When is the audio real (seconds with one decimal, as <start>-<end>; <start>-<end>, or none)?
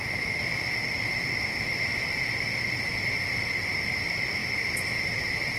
0.0-5.6